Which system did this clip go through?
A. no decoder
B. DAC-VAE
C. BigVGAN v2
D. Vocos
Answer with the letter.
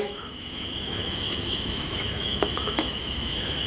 B